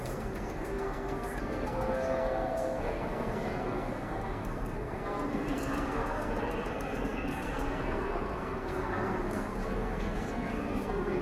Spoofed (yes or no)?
yes